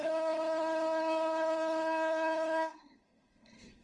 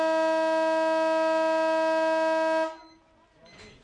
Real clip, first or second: second